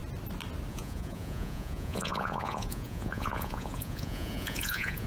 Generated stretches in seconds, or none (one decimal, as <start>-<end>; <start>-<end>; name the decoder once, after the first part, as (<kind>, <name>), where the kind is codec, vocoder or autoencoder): 0.7-5.1 (vocoder, Vocos)